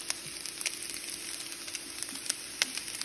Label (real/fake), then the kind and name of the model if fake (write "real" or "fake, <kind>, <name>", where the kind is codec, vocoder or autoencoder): real